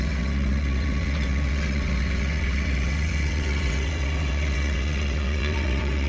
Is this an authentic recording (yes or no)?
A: no